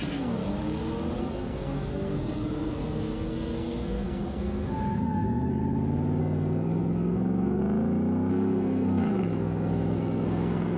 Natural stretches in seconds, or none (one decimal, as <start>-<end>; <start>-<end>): 0.4-1.2; 5.6-6.2; 7.6-8.3